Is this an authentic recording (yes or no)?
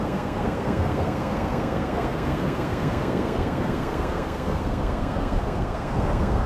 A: no